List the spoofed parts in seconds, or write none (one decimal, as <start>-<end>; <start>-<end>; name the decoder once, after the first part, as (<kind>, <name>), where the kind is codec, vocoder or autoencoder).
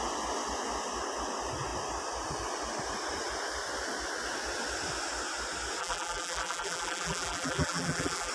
5.8-8.3 (vocoder, BigVGAN v2)